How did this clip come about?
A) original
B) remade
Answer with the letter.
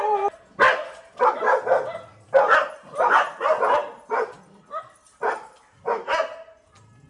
A